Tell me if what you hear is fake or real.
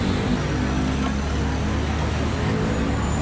real